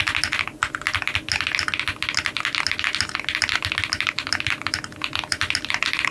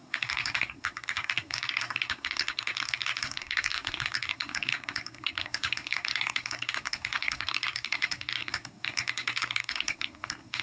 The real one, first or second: first